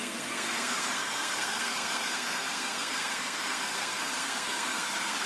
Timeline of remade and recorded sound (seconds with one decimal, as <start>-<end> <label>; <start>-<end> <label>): 0.0-5.3 remade